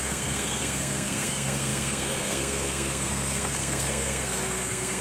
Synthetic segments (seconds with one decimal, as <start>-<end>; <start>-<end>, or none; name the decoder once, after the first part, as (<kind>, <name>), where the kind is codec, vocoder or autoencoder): 0.0-5.0 (codec, SNAC)